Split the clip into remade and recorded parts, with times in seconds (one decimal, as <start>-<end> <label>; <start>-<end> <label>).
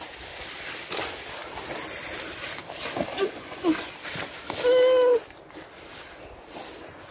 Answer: 0.0-3.1 recorded; 3.1-3.9 remade; 3.9-7.1 recorded